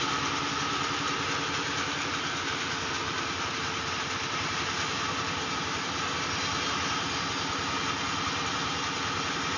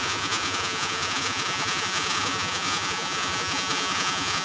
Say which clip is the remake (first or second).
second